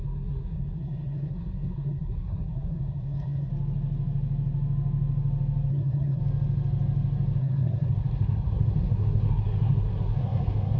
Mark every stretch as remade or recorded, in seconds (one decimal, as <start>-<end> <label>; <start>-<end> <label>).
0.0-3.5 remade; 3.5-5.7 recorded; 5.7-6.2 remade; 6.2-7.4 recorded; 7.4-10.8 remade